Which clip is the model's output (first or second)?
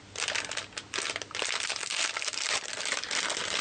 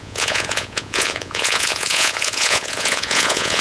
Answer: second